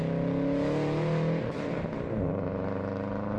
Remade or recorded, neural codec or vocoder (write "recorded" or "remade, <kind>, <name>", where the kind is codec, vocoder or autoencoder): recorded